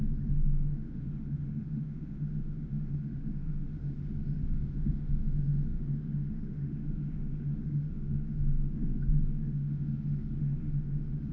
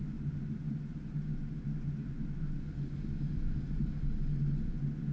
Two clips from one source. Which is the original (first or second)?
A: second